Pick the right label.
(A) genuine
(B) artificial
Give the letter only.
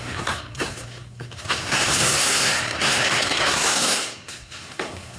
B